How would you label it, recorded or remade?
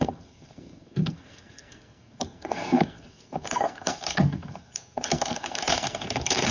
remade